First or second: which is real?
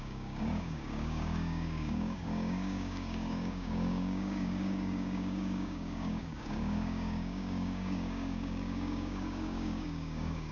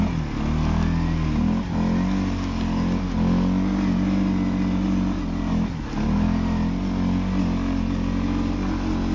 second